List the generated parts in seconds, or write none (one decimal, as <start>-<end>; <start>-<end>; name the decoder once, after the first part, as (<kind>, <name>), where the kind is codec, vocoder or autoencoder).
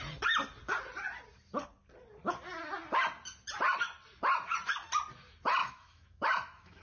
5.6-6.8 (autoencoder, DAC-VAE)